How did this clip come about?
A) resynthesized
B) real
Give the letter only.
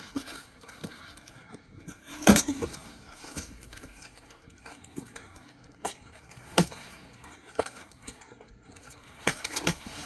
A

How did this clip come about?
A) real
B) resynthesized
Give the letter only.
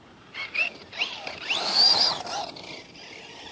B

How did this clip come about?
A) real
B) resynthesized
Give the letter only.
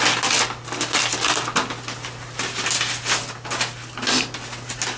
A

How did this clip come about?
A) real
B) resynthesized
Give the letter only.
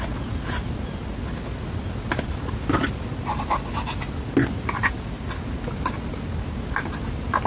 A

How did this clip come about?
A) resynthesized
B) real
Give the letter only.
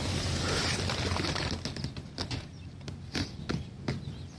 B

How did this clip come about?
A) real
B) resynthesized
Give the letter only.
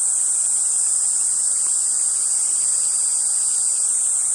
A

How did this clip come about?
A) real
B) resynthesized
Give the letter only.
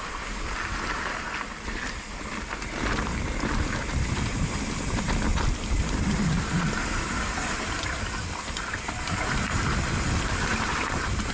A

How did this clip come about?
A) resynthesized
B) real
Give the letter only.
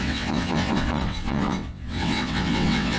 A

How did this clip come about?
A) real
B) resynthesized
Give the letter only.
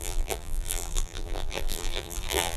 B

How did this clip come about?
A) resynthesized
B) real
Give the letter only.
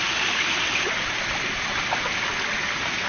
B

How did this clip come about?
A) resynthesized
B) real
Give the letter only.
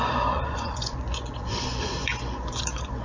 A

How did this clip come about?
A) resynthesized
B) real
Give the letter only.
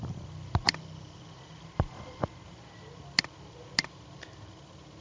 B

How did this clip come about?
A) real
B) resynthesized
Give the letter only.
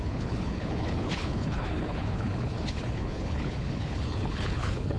B